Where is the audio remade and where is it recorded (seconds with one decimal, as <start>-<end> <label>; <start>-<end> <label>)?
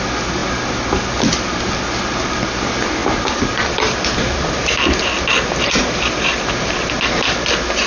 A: 0.0-7.9 recorded